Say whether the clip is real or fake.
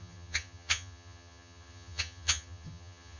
fake